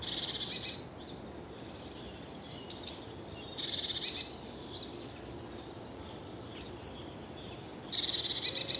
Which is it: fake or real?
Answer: real